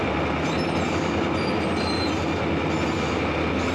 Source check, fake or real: real